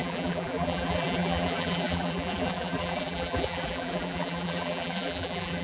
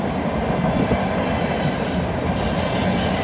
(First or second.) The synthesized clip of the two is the first